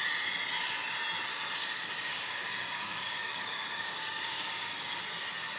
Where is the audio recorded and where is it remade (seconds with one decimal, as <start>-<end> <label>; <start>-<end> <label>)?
0.0-1.6 recorded; 1.6-5.0 remade; 5.0-5.6 recorded